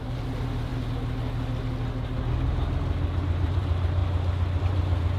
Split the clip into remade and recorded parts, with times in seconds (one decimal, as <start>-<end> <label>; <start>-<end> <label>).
0.0-0.7 remade; 0.7-3.2 recorded; 3.2-4.0 remade; 4.0-4.6 recorded; 4.6-5.2 remade